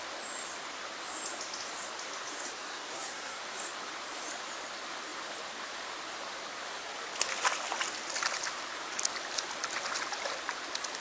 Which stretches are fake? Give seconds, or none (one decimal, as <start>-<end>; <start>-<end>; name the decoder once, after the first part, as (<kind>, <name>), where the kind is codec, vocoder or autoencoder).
2.6-3.4 (codec, SNAC)